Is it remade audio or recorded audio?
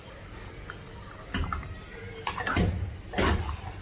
recorded